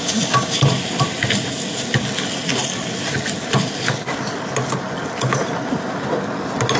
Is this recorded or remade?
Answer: recorded